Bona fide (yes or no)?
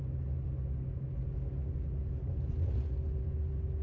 yes